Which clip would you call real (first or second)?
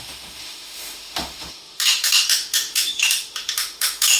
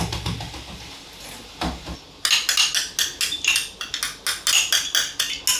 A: second